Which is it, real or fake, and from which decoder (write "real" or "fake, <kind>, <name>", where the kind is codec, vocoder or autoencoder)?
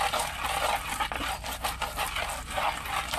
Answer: real